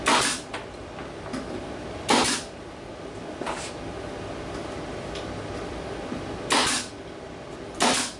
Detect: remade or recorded recorded